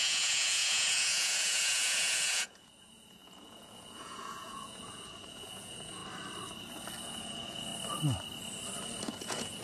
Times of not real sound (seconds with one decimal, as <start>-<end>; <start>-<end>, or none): 0.0-6.0; 7.0-7.7; 9.0-9.6

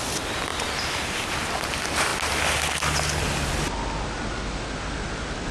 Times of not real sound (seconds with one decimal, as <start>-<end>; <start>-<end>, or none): none